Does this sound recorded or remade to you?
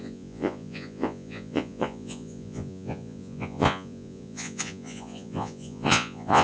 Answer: remade